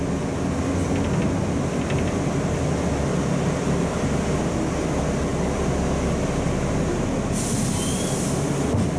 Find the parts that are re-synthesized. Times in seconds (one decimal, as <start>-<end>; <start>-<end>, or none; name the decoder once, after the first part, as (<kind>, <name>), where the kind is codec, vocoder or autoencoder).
none